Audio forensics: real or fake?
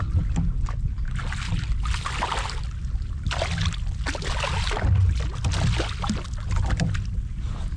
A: real